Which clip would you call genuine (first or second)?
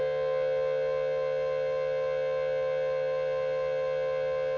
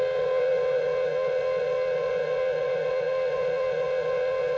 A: first